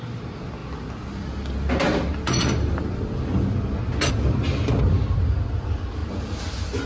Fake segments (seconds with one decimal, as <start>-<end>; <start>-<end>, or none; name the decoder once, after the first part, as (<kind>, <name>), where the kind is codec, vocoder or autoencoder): none